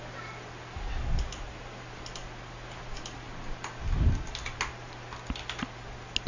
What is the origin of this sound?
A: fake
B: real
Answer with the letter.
B